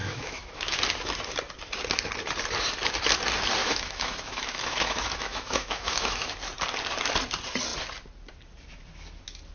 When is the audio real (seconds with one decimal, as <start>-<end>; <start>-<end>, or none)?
0.8-3.6; 6.3-9.5